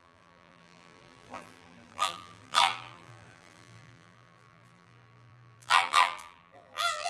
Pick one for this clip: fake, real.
fake